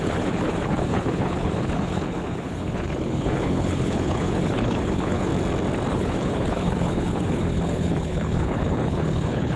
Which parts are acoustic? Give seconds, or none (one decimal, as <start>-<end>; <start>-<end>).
5.3-5.9